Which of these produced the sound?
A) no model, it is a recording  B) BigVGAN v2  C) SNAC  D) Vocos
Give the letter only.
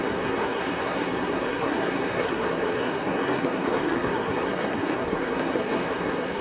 C